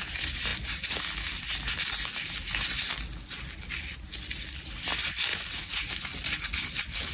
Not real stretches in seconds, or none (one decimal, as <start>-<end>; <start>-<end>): 5.3-5.9